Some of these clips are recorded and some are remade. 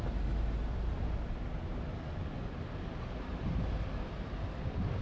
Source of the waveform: recorded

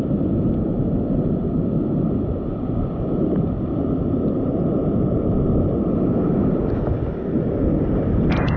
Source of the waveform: remade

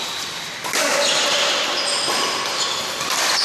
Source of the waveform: remade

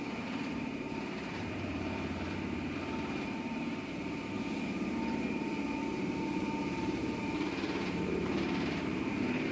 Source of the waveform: remade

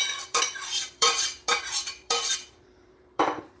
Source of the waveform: remade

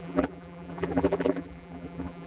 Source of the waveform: remade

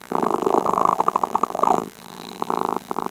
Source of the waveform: remade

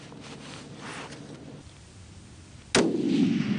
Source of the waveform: recorded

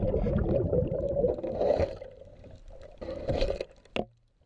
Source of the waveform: recorded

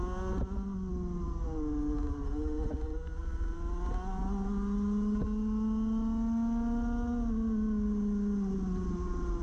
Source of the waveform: recorded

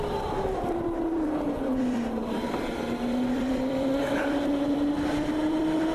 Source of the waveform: remade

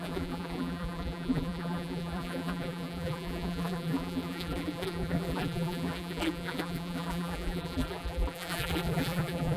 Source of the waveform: remade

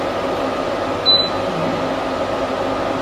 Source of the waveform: recorded